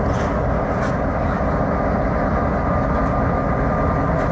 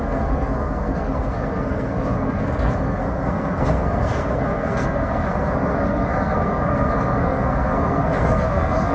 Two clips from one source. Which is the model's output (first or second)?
second